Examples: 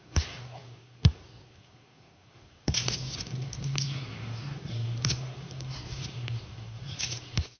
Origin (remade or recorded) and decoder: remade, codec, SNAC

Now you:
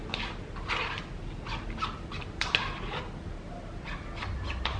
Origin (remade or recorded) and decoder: recorded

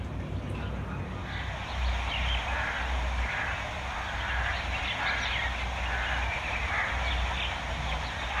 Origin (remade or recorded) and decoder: recorded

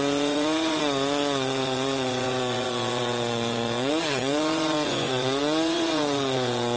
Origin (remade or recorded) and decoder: remade, vocoder, Vocos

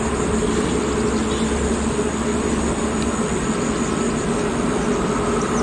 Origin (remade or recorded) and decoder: recorded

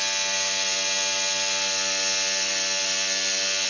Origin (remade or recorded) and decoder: recorded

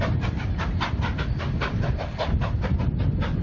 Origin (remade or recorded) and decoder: recorded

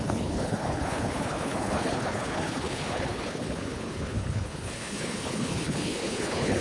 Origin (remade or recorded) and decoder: remade, codec, HILCodec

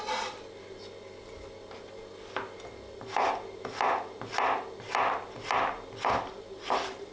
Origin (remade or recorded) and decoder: recorded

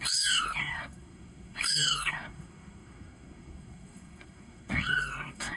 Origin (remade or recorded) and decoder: remade, codec, SNAC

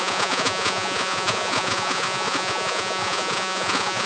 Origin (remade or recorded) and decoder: remade, vocoder, Vocos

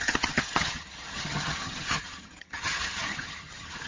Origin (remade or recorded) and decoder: remade, vocoder, HiFi-GAN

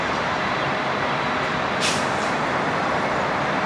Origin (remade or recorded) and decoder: remade, vocoder, BigVGAN v2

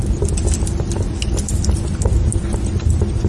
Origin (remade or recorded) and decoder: recorded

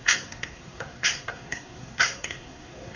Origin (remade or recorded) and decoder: remade, codec, SNAC